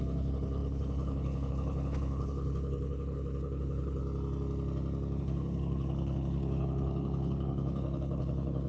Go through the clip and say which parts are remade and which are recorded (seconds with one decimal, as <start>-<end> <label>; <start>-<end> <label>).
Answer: 0.0-4.0 remade; 4.0-5.2 recorded; 5.2-8.7 remade